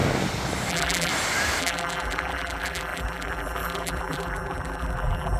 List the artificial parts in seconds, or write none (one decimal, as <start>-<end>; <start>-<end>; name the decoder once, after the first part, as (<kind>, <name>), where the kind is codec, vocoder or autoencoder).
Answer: 0.7-1.1 (vocoder, BigVGAN v2); 1.6-5.4